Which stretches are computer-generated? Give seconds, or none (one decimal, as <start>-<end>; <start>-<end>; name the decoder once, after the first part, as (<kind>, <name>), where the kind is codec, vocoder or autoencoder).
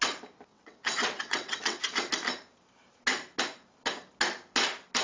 0.5-1.8 (vocoder, WaveNeXt)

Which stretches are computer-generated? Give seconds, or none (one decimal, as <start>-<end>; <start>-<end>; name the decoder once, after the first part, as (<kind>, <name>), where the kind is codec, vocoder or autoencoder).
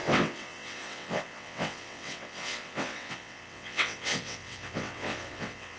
0.0-5.8 (vocoder, WaveNeXt)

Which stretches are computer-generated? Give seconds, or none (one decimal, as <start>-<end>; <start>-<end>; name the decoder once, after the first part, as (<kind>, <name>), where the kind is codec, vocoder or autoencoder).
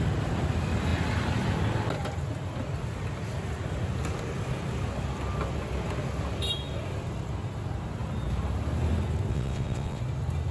9.3-10.0 (vocoder, WaveNeXt)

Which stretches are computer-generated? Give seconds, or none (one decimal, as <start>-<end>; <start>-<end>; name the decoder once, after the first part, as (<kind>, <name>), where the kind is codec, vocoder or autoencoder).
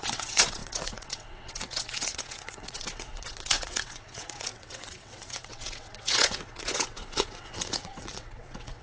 0.0-8.8 (vocoder, WaveNeXt)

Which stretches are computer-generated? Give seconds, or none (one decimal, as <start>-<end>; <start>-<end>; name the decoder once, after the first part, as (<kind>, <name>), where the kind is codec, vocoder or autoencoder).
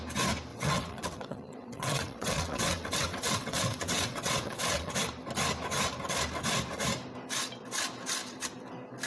0.5-4.9 (vocoder, WaveNeXt)